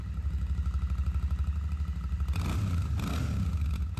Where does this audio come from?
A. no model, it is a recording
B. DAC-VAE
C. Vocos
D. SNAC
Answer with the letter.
A